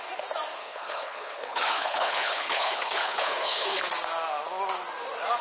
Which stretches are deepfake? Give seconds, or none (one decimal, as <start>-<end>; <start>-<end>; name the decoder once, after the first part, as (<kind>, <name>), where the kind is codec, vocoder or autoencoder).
0.6-3.8 (codec, HILCodec)